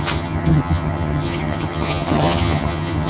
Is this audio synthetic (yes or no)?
yes